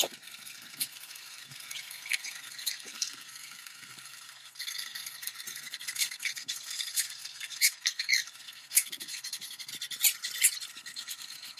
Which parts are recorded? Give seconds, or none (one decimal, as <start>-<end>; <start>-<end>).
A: 9.7-10.7